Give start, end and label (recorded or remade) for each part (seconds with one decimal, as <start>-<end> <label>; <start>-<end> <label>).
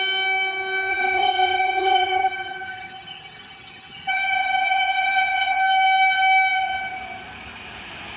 0.0-0.9 recorded; 0.9-5.6 remade; 5.6-8.2 recorded